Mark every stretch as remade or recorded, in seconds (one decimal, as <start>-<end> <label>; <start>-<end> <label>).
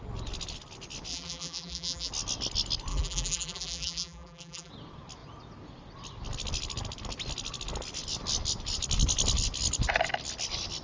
0.0-1.1 recorded; 1.1-2.1 remade; 2.1-2.9 recorded; 2.9-4.7 remade; 4.7-10.8 recorded